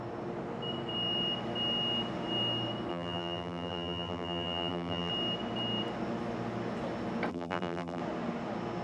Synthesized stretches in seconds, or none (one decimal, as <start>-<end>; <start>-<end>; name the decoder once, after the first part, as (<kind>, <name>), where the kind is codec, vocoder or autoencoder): 2.9-5.1 (vocoder, BigVGAN v2); 7.3-8.0